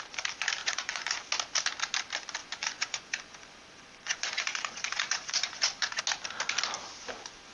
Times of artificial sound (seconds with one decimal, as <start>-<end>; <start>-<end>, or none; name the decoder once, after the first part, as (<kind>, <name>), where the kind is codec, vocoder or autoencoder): 0.6-1.2 (vocoder, Vocos); 2.4-6.0